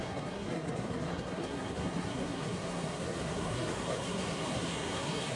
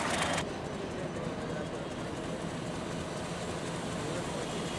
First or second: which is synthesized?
first